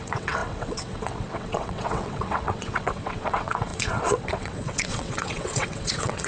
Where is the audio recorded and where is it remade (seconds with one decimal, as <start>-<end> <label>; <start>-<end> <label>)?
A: 0.0-6.3 remade